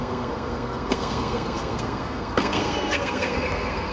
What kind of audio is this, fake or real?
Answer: fake